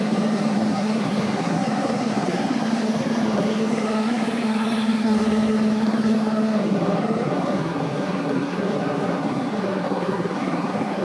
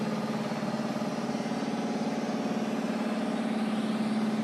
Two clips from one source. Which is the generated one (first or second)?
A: first